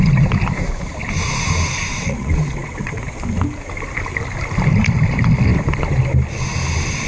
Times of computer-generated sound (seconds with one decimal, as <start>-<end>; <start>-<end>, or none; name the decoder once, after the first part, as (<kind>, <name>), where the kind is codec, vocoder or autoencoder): 1.9-3.0 (vocoder, WaveNeXt)